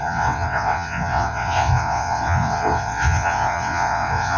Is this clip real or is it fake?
fake